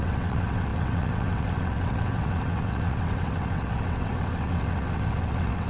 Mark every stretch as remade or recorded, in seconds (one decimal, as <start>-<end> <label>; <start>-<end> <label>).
0.0-5.7 remade